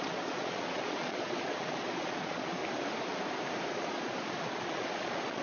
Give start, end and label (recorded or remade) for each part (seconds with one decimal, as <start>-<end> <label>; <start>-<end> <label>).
0.0-2.6 remade; 2.6-3.7 recorded; 3.7-5.4 remade